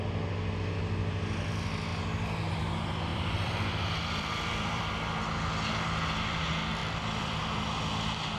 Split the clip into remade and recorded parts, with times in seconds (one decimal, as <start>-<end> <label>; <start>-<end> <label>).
0.0-3.1 recorded; 3.1-4.8 remade; 4.8-6.8 recorded; 6.8-7.4 remade; 7.4-8.4 recorded